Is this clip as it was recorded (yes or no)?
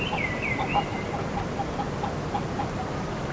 yes